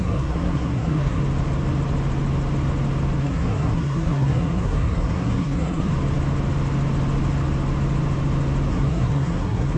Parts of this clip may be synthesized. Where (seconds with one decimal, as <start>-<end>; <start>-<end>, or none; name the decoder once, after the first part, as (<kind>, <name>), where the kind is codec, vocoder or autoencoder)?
0.0-1.2 (codec, SNAC); 3.2-5.9; 8.7-9.8